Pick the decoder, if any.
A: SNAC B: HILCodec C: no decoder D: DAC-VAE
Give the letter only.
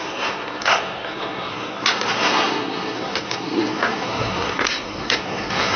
A